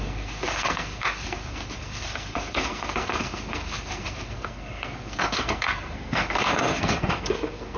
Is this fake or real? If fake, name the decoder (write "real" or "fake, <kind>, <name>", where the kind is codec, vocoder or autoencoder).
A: fake, codec, SNAC